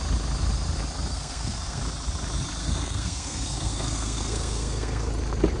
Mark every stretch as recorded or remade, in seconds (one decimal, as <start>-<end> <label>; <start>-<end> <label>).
0.0-1.1 recorded; 1.1-1.8 remade; 1.8-2.6 recorded; 2.6-5.1 remade; 5.1-5.6 recorded